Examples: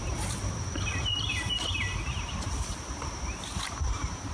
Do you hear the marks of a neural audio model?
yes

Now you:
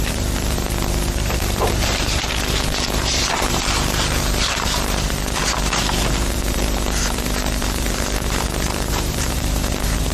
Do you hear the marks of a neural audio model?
yes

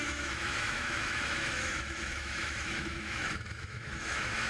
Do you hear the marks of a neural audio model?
yes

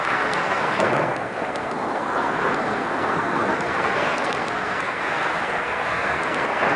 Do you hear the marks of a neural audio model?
yes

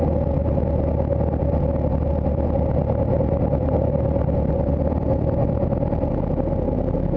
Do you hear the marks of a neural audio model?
no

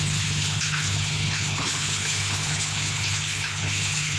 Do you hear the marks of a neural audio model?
yes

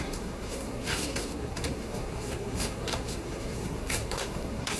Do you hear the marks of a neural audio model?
yes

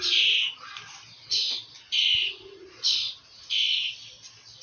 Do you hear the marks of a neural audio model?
no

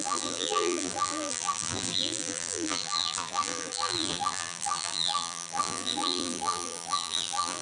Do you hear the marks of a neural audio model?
yes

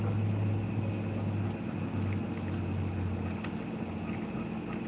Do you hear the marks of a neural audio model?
no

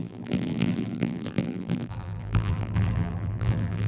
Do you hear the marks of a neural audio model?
yes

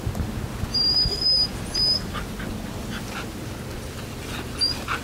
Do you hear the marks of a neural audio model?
no